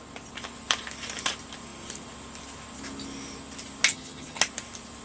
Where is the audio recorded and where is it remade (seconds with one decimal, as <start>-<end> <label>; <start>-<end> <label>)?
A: 0.0-3.9 recorded; 3.9-4.4 remade; 4.4-5.0 recorded